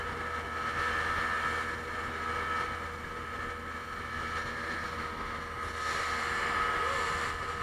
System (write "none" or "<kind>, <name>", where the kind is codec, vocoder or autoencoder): none